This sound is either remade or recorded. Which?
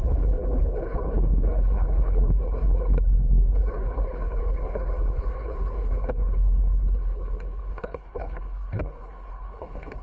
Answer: remade